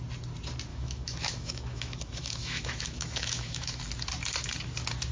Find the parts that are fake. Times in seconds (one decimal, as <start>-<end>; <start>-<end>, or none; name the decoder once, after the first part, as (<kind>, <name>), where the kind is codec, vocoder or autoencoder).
0.7-3.8 (autoencoder, DAC-VAE)